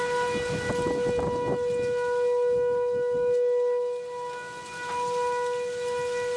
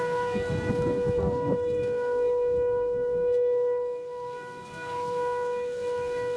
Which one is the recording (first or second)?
first